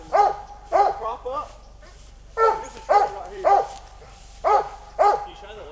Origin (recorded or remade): remade